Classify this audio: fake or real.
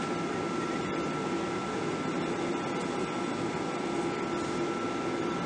real